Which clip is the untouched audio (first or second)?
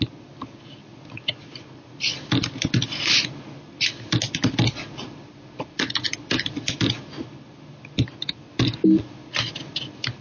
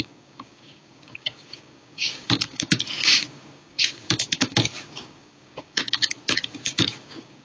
first